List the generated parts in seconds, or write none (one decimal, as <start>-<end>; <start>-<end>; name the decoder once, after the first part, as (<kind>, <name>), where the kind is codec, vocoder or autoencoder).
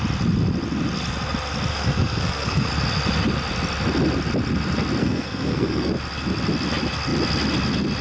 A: 1.7-2.7 (codec, SNAC); 5.0-5.9